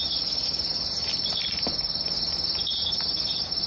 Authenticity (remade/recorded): recorded